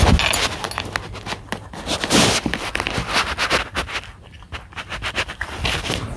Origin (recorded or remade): recorded